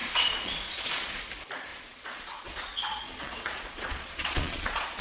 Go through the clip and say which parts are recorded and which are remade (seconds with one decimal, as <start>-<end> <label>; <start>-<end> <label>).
0.0-1.2 remade; 1.2-1.7 recorded; 1.7-5.0 remade